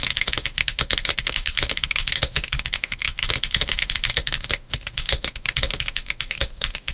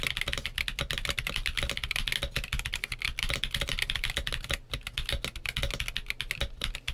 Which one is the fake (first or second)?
first